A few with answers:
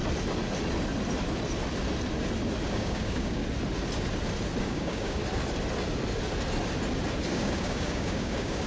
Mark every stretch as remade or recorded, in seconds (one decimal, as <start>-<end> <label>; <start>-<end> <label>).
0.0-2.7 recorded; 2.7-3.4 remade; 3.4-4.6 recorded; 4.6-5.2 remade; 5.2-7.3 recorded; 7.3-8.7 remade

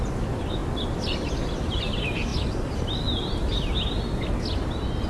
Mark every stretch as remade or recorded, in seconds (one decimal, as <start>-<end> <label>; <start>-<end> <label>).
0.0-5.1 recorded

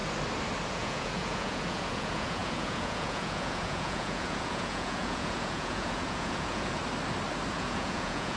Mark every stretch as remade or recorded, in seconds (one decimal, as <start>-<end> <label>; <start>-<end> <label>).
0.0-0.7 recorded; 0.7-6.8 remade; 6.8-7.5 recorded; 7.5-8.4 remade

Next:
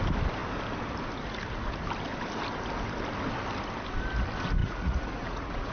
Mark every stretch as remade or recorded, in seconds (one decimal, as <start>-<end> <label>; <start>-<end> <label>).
0.0-4.6 recorded; 4.6-5.7 remade